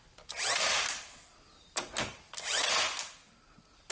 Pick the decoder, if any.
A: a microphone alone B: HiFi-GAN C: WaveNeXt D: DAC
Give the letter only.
A